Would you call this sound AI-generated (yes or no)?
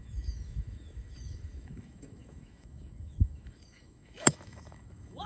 yes